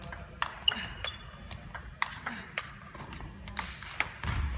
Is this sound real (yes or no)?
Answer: yes